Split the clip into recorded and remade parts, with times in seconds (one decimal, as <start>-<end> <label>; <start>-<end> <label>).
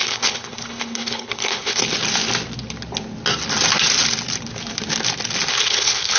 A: 0.0-1.8 remade; 1.8-5.5 recorded; 5.5-6.2 remade